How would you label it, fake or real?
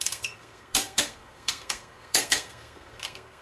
fake